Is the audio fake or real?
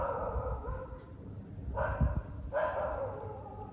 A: real